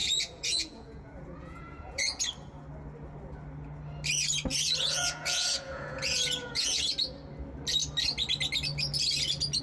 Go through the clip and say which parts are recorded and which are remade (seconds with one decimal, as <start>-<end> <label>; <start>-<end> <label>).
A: 0.0-2.2 remade; 2.2-4.5 recorded; 4.5-6.9 remade; 6.9-9.6 recorded